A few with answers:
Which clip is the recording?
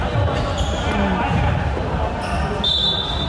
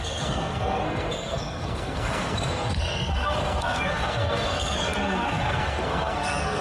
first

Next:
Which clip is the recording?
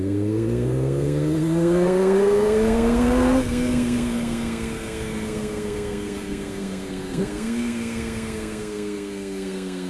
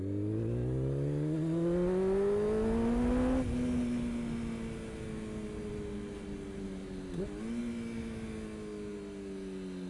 second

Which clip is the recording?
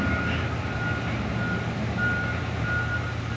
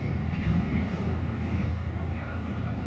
first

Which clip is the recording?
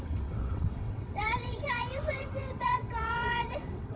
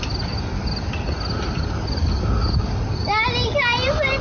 second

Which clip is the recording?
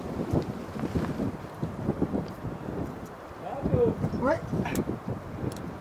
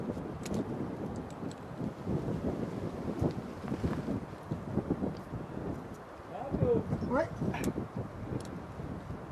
second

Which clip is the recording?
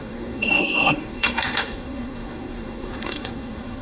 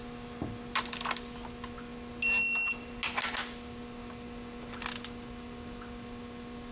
second